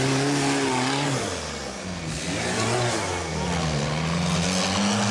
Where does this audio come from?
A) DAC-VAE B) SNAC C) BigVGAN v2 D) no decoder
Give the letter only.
D